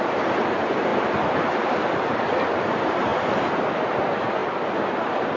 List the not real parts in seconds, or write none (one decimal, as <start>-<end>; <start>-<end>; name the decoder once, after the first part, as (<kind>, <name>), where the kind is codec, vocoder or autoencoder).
none